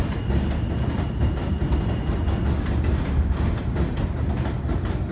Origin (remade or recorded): recorded